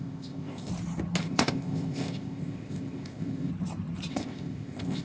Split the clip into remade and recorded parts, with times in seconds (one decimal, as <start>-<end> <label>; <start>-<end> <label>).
0.0-0.7 remade; 0.7-1.2 recorded; 1.2-3.5 remade; 3.5-4.1 recorded; 4.1-5.0 remade